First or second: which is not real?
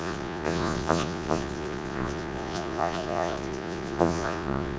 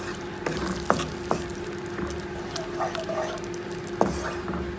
first